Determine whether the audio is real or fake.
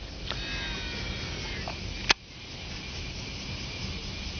real